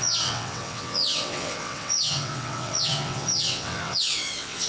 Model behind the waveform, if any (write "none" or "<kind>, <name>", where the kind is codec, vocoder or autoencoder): vocoder, WaveNeXt